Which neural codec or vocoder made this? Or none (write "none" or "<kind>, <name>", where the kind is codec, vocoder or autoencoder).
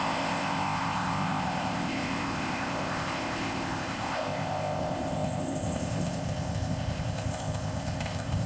codec, ZipCodec